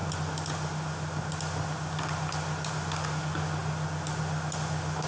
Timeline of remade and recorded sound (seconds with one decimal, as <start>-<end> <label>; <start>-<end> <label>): 0.0-5.1 recorded